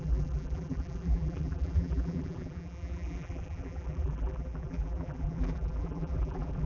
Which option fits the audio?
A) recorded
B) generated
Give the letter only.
B